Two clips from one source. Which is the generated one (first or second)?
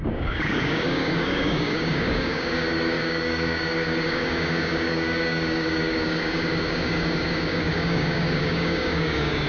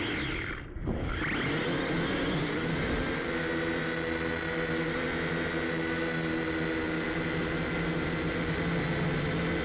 first